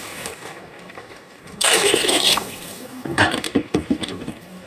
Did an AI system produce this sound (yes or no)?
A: yes